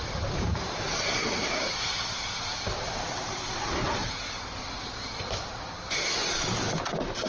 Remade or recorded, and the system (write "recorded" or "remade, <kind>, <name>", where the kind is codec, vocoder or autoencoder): recorded